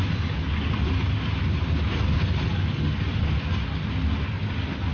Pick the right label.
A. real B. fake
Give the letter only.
A